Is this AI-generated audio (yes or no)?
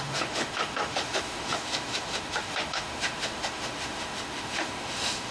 yes